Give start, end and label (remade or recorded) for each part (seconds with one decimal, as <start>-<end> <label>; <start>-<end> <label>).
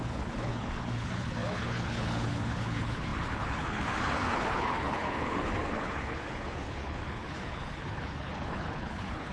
0.0-9.3 remade